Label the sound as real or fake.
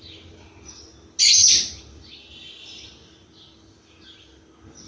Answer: real